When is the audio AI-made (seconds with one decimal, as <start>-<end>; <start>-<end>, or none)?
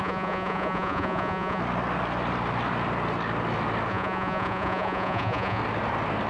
0.0-1.6; 3.9-5.6